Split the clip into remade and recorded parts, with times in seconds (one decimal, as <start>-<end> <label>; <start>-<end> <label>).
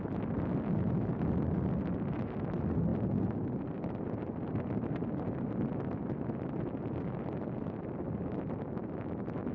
0.0-9.5 recorded